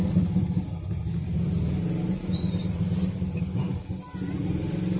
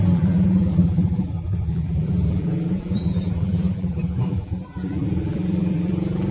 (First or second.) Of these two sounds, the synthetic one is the second